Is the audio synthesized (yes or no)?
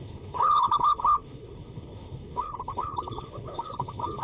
yes